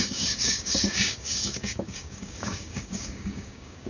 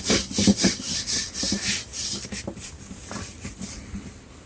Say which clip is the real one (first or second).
second